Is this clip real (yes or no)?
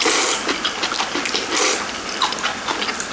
yes